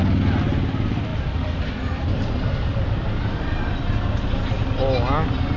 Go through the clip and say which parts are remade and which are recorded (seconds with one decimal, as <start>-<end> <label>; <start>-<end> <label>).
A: 0.0-1.1 recorded; 1.1-3.9 remade; 3.9-5.6 recorded